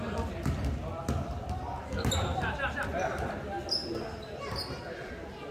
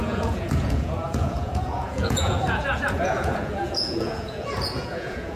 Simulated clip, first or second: second